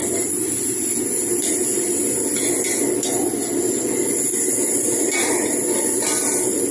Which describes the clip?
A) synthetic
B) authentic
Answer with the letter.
B